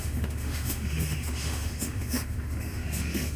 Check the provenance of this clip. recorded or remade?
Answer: remade